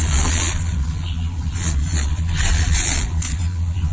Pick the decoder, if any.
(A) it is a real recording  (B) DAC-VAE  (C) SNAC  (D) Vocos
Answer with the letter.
D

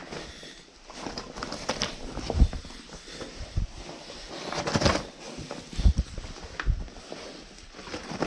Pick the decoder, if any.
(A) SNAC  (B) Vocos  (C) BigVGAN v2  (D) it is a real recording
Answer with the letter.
D